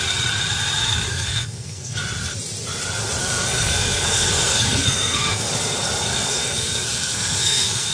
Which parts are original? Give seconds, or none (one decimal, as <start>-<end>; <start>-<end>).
0.0-1.1; 2.0-3.2; 5.5-6.1